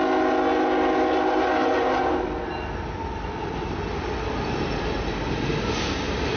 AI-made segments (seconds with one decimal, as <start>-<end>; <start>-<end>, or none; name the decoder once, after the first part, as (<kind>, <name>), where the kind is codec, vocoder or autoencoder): none